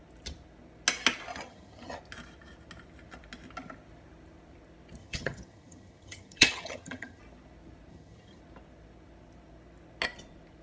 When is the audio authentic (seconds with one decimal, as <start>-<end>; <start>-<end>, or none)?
0.0-1.3; 2.0-5.0; 7.2-7.9; 8.4-10.6